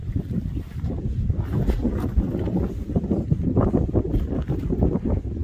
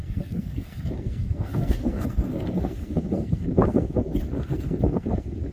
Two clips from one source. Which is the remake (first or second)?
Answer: second